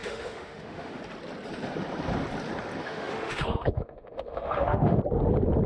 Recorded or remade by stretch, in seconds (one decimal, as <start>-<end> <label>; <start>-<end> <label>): 0.0-1.0 remade; 1.0-2.8 recorded; 2.8-5.0 remade; 5.0-5.7 recorded